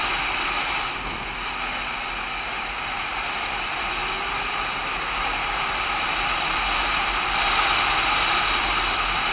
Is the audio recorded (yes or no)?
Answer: yes